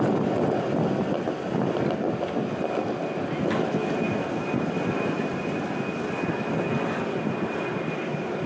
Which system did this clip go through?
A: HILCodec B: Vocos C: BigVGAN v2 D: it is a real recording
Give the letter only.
D